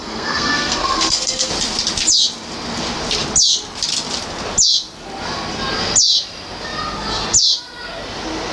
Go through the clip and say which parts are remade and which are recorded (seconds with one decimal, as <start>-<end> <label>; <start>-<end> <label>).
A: 0.0-1.5 remade; 1.5-8.5 recorded